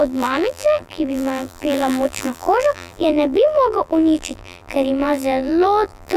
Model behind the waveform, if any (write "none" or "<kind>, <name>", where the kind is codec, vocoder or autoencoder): vocoder, BigVGAN v2